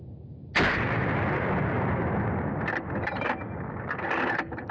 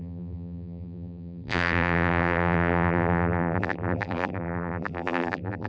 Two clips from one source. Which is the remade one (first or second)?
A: second